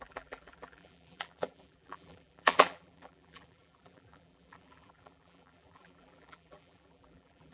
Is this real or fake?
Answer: fake